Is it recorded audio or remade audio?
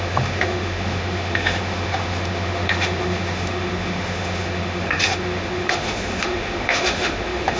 remade